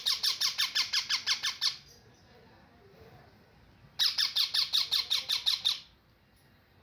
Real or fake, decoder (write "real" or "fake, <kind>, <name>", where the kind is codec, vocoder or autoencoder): real